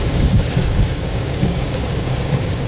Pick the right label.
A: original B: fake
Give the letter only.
B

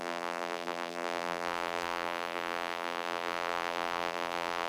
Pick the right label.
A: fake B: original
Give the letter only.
A